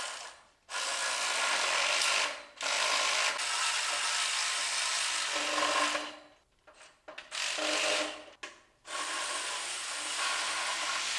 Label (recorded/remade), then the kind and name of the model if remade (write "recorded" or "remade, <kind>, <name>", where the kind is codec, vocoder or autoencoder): recorded